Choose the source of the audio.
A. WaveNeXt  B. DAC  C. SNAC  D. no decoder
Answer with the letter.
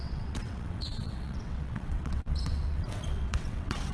A